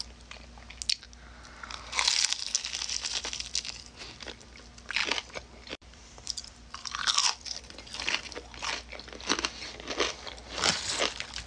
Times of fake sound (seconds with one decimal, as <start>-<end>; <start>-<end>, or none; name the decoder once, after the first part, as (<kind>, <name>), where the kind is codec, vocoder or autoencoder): 5.0-8.2 (vocoder, BigVGAN v2)